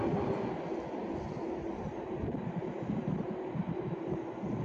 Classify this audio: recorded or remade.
recorded